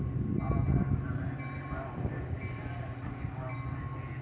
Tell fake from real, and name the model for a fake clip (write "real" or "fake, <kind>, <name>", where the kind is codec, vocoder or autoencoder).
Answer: real